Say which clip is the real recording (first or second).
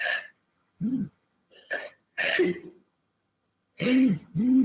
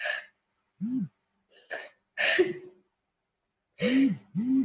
second